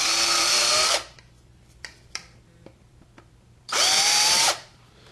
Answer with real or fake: fake